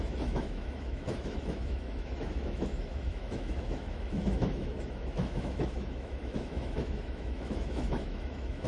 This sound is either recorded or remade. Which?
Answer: remade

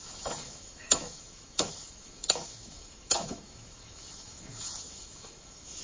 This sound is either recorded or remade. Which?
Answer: remade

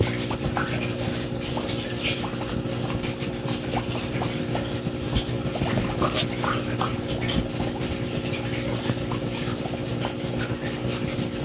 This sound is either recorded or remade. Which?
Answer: recorded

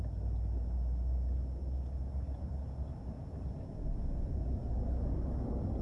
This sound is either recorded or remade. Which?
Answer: recorded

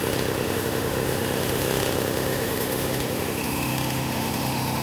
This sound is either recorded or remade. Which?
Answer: remade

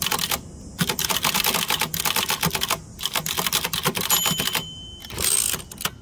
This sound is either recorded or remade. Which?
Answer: recorded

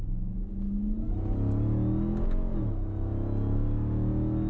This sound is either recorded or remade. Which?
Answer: recorded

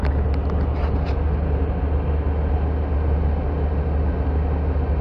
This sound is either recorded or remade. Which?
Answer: recorded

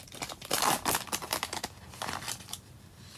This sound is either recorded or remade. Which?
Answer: recorded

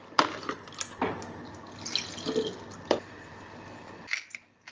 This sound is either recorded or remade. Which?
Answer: recorded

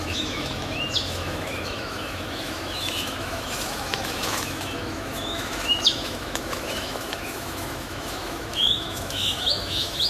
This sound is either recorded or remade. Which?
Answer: remade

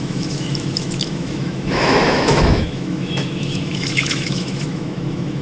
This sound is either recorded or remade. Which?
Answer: remade